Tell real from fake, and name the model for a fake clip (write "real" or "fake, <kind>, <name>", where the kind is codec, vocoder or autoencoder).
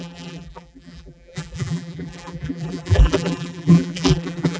fake, vocoder, BigVGAN v2